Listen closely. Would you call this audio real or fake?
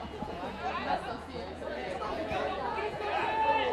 fake